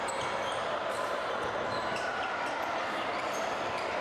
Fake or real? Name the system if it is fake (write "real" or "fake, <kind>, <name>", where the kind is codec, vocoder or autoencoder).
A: fake, vocoder, BigVGAN v2